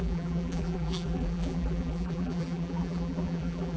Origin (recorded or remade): remade